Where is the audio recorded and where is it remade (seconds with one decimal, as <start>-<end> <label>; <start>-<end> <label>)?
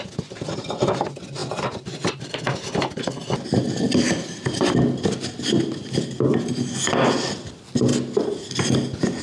0.0-7.9 recorded; 7.9-9.2 remade